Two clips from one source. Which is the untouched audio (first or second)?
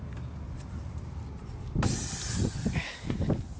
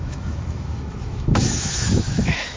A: first